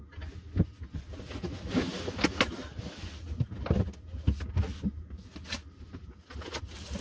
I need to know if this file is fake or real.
real